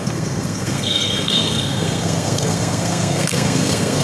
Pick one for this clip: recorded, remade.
remade